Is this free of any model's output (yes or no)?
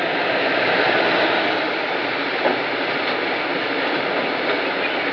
yes